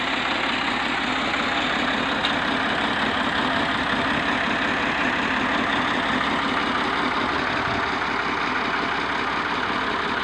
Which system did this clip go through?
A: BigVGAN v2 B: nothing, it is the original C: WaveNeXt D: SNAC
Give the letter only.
B